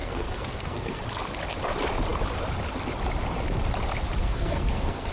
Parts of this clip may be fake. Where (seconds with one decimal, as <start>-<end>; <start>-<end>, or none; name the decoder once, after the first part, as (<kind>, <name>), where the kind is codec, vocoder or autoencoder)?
0.0-1.0 (codec, SNAC); 4.2-5.1